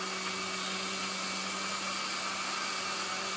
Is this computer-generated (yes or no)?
no